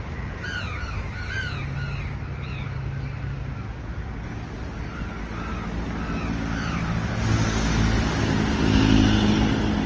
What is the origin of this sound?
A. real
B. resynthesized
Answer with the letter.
A